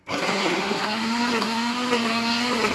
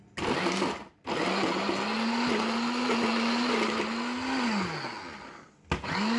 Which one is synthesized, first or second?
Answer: first